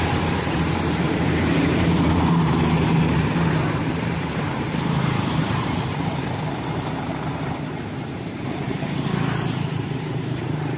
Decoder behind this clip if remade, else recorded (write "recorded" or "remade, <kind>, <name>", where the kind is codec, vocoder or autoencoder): remade, vocoder, BigVGAN v2